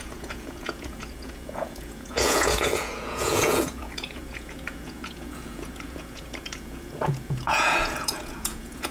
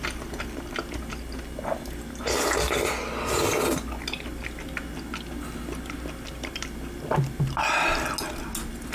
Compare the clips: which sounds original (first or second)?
second